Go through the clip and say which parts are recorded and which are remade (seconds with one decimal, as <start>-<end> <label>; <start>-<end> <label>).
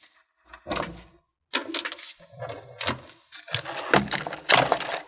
0.0-5.1 recorded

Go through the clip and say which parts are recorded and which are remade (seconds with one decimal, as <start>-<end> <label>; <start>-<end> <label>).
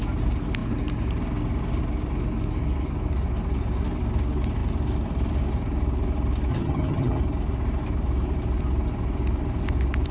0.0-6.5 recorded; 6.5-7.2 remade; 7.2-10.1 recorded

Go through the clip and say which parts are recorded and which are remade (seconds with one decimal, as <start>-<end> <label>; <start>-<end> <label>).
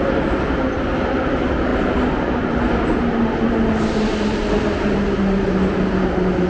0.0-6.5 recorded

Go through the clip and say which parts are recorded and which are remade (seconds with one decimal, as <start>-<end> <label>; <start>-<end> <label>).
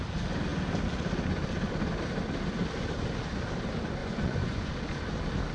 0.0-4.0 recorded; 4.0-4.7 remade; 4.7-5.5 recorded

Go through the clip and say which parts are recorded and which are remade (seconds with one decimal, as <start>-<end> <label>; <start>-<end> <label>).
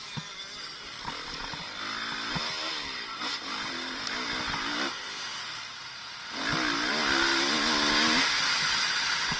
0.0-9.4 recorded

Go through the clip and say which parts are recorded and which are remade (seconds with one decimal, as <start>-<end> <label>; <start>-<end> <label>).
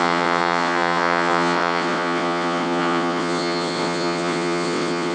0.0-5.1 remade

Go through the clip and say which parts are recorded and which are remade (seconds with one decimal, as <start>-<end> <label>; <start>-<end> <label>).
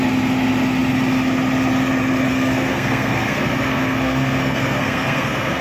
0.0-2.3 recorded; 2.3-5.6 remade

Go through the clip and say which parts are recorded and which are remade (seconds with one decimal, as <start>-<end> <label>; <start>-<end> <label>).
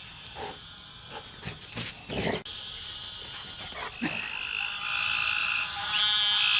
0.0-5.4 recorded; 5.4-6.0 remade; 6.0-6.6 recorded